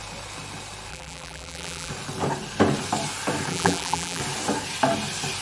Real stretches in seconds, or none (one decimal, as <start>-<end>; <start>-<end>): 0.0-0.9; 1.9-3.5; 4.2-5.4